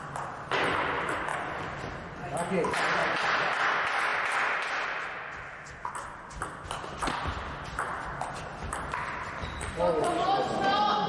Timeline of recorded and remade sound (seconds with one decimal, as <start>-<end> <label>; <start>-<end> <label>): 0.0-3.0 recorded; 3.0-3.6 remade; 3.6-8.5 recorded; 8.5-9.7 remade; 9.7-11.1 recorded